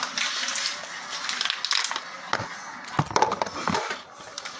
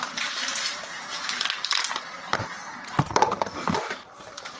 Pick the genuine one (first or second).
first